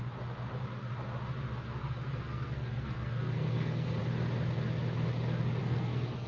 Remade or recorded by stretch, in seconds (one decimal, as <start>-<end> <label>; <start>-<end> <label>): 0.0-1.8 recorded; 1.8-4.0 remade; 4.0-5.6 recorded; 5.6-6.3 remade